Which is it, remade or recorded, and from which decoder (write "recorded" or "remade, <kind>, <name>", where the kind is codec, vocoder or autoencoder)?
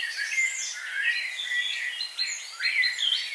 recorded